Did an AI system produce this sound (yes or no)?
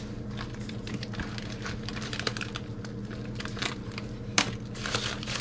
yes